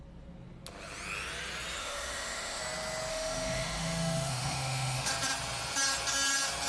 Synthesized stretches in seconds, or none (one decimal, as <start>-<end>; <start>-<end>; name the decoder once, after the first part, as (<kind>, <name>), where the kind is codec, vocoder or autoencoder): 1.8-2.6 (autoencoder, DAC-VAE); 3.1-5.1